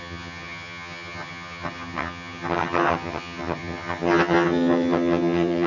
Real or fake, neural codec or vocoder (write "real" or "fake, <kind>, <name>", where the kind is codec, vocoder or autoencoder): fake, vocoder, HiFi-GAN